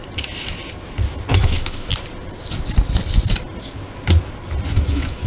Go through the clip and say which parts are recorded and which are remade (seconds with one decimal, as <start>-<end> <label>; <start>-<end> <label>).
0.0-1.3 recorded; 1.3-1.9 remade; 1.9-4.7 recorded; 4.7-5.3 remade